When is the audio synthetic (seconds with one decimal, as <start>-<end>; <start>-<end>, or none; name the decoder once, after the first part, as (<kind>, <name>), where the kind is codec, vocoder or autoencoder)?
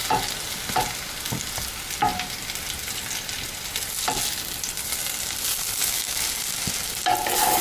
5.8-6.3 (autoencoder, DAC-VAE)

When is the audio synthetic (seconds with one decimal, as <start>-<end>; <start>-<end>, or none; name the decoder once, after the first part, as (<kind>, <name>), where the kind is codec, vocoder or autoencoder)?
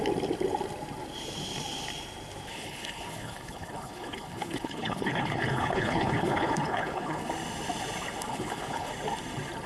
2.5-7.3 (codec, HILCodec); 8.3-8.9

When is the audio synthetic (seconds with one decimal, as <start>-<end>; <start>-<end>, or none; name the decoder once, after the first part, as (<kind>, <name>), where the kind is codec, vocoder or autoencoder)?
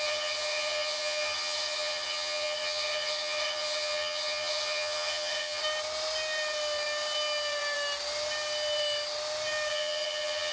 0.0-5.6 (vocoder, HiFi-GAN); 9.7-10.5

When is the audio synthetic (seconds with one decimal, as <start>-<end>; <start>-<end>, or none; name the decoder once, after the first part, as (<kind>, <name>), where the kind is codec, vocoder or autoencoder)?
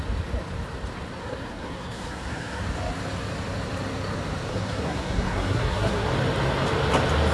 1.2-2.6 (codec, SNAC); 4.5-6.1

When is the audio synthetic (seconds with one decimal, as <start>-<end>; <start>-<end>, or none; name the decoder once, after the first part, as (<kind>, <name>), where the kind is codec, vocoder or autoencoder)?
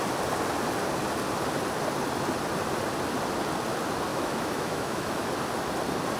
4.1-5.3 (autoencoder, DAC-VAE)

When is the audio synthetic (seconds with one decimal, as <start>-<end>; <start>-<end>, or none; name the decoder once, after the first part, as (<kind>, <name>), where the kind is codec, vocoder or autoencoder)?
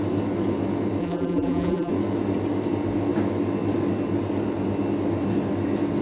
1.0-1.9 (vocoder, BigVGAN v2)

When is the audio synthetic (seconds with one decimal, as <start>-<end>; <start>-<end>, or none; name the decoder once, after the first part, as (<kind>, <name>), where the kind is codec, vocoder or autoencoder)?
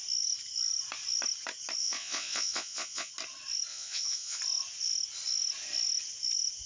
1.8-3.1 (vocoder, Vocos); 3.7-4.4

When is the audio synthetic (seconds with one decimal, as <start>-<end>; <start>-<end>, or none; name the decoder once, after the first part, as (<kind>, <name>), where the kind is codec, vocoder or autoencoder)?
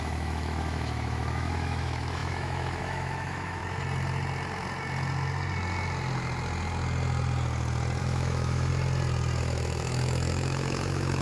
0.0-3.6 (autoencoder, DAC-VAE); 8.0-8.7; 9.4-11.2